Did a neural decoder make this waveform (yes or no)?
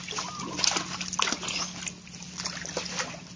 no